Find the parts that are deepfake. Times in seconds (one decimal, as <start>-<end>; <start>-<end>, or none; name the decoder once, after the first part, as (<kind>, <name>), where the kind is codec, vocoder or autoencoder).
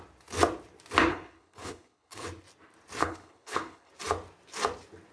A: 1.1-2.3 (codec, HILCodec); 3.0-3.9